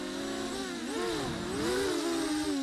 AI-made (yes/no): no